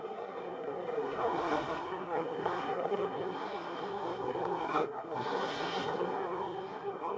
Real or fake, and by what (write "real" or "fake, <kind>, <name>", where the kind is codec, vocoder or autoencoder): fake, codec, SNAC